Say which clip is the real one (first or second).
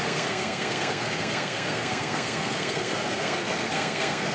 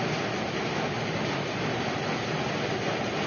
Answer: second